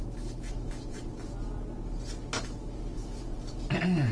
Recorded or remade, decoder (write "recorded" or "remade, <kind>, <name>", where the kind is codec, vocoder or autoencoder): recorded